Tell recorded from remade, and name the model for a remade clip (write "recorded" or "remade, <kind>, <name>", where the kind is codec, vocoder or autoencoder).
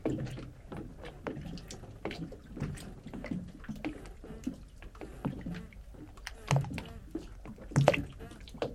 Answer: recorded